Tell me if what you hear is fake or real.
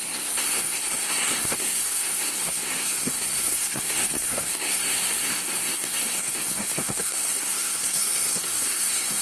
fake